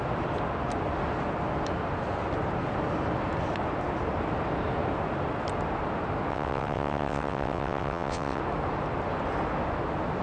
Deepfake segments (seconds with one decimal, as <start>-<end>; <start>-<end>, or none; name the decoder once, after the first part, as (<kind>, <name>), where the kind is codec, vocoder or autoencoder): 6.3-8.4 (vocoder, WaveNeXt)